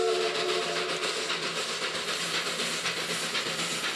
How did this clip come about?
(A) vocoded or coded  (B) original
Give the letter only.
B